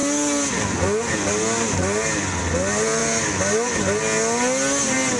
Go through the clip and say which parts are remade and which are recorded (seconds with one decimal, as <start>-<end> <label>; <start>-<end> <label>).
0.0-5.2 recorded